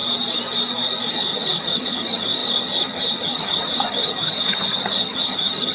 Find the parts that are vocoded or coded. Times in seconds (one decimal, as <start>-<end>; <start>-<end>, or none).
1.1-5.7